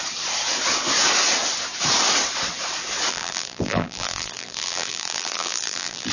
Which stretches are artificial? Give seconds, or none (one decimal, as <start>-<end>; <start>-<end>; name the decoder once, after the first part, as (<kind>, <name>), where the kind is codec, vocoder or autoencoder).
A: 3.1-6.1 (vocoder, BigVGAN v2)